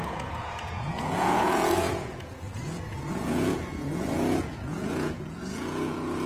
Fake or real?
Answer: fake